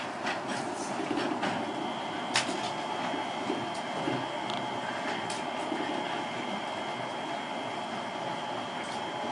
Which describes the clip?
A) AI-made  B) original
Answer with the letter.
B